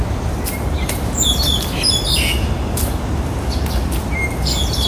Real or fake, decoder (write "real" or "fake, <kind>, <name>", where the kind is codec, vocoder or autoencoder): real